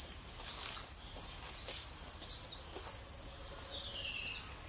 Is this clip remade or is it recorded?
recorded